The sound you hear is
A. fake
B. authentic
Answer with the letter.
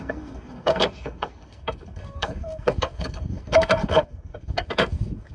A